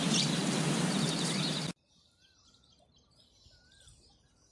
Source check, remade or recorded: recorded